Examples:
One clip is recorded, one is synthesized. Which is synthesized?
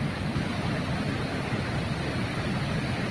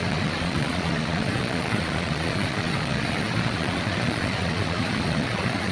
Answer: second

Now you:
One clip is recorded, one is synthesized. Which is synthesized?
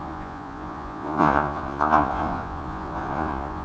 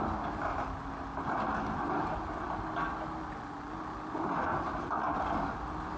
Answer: first